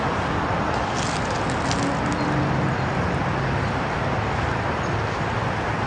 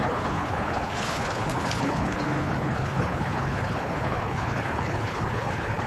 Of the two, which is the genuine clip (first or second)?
first